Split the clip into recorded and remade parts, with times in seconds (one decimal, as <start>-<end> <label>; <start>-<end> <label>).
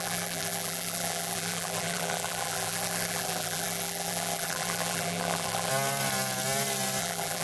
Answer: 0.0-5.7 remade; 5.7-7.0 recorded; 7.0-7.4 remade